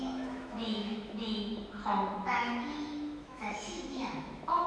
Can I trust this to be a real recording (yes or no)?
no